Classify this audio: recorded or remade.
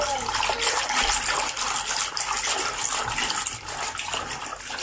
recorded